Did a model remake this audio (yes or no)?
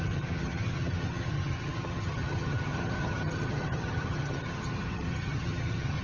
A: yes